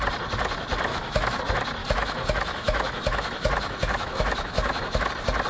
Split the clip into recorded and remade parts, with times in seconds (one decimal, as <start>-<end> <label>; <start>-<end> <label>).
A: 0.0-0.9 recorded; 0.9-1.4 remade; 1.4-1.8 recorded; 1.8-5.1 remade; 5.1-5.5 recorded